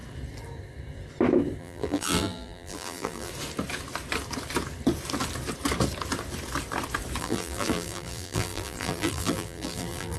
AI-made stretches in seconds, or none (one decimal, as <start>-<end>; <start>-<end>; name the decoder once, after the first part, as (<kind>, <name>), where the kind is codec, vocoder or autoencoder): 1.6-3.3 (vocoder, BigVGAN v2); 7.2-10.2